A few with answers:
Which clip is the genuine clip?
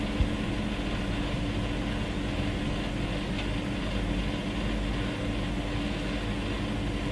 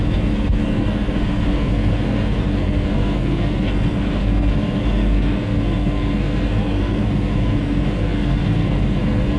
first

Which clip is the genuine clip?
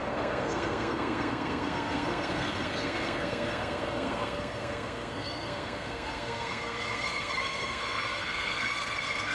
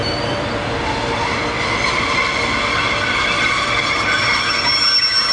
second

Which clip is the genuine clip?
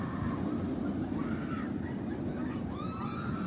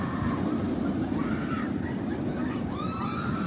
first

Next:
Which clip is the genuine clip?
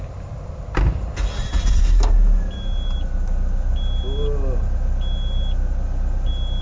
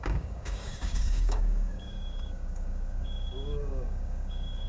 first